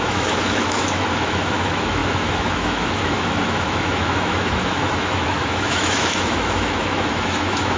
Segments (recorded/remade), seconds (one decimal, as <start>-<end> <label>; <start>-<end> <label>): 0.0-7.8 remade